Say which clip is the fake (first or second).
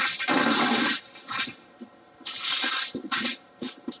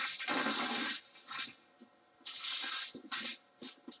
first